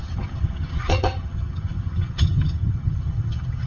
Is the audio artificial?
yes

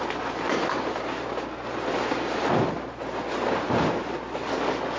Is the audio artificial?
no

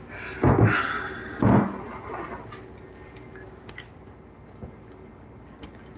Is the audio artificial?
no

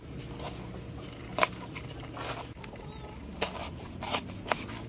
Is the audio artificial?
no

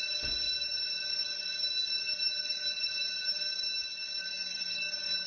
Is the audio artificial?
no